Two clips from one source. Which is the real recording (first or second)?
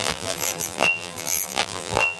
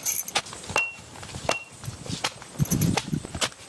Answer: second